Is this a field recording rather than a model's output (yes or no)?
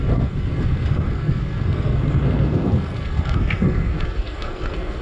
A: no